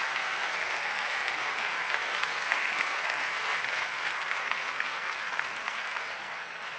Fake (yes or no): yes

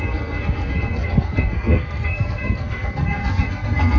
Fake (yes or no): yes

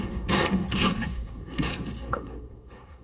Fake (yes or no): yes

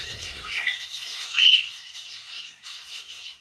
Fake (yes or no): yes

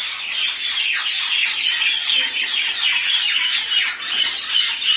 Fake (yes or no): no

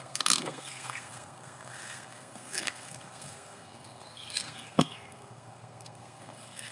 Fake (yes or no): yes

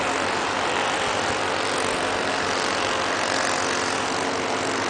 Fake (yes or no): no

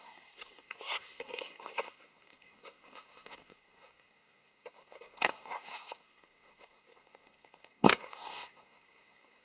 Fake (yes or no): yes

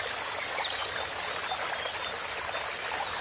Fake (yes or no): no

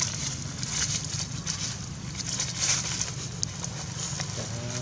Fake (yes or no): no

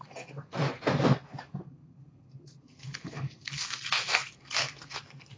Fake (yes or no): yes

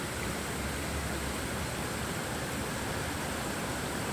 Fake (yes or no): no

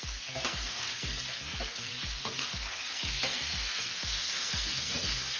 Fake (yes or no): yes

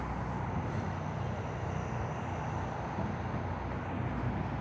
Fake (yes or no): no